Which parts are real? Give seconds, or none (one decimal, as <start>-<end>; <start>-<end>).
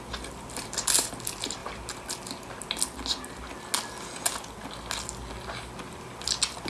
0.0-6.7